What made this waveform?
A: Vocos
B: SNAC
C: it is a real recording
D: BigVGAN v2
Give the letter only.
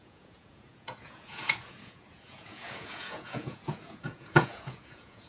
A